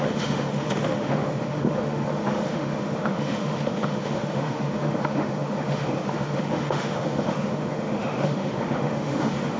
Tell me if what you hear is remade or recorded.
remade